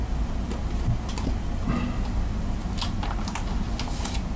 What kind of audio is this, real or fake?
real